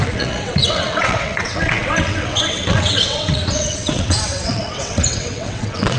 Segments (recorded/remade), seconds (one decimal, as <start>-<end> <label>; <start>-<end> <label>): 0.0-6.0 remade